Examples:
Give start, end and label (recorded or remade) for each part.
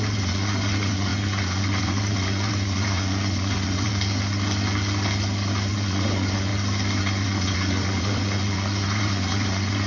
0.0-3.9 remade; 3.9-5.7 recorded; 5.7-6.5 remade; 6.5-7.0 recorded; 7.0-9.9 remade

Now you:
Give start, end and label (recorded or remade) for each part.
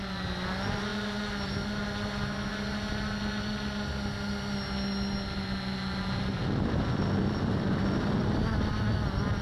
0.0-9.4 recorded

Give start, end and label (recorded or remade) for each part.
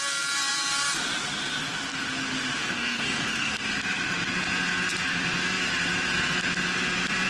0.0-2.6 recorded; 2.6-3.5 remade; 3.5-7.3 recorded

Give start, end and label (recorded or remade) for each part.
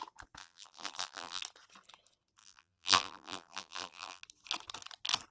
0.0-0.4 recorded; 0.4-1.4 remade; 1.4-2.4 recorded; 2.4-4.2 remade; 4.2-5.3 recorded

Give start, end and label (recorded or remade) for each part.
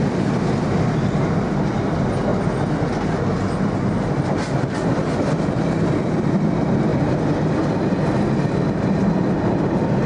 0.0-10.1 recorded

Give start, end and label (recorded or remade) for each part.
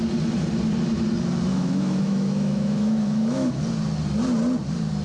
0.0-1.5 recorded; 1.5-3.5 remade; 3.5-5.0 recorded